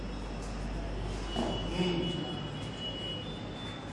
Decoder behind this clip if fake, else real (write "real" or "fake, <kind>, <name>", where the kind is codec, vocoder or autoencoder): real